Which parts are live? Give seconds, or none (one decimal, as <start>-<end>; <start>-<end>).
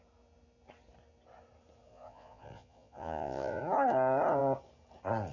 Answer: 0.0-1.9; 3.6-5.3